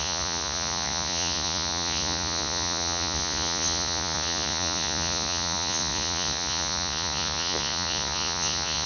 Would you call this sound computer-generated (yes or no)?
yes